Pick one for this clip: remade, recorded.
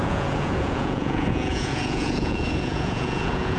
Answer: remade